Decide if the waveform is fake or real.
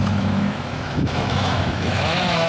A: fake